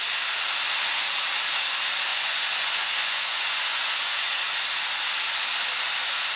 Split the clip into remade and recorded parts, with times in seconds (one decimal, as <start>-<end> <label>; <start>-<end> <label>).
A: 0.0-2.1 recorded; 2.1-4.5 remade; 4.5-6.4 recorded